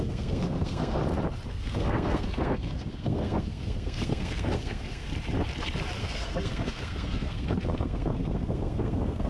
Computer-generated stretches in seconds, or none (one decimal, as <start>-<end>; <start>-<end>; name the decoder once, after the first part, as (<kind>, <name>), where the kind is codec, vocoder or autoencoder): 0.0-1.0 (codec, SNAC); 1.5-5.1; 6.0-9.3